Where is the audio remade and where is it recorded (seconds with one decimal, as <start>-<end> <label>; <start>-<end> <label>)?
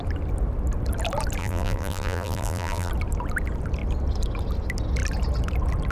0.0-1.4 recorded; 1.4-2.9 remade; 2.9-5.9 recorded